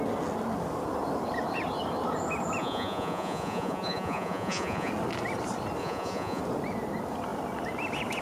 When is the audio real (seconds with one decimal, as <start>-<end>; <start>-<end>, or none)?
0.0-2.6; 4.9-5.8; 6.4-8.2